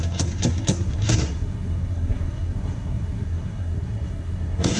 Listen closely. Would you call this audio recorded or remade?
remade